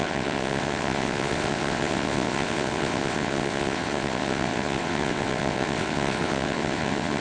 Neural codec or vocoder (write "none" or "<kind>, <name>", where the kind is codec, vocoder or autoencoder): vocoder, WaveNeXt